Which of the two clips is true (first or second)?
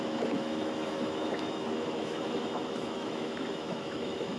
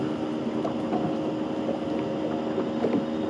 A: second